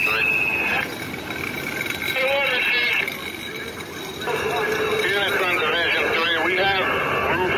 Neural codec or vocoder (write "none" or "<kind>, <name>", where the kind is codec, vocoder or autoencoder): none